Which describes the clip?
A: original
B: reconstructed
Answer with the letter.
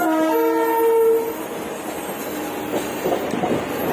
A